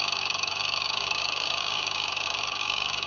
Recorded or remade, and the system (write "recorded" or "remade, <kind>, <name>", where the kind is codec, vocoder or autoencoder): remade, codec, DAC